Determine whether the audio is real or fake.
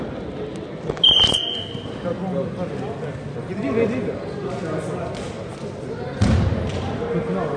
real